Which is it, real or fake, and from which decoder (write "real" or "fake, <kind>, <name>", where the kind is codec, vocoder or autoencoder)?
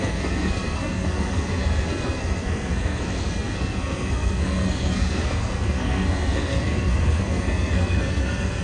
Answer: fake, codec, SNAC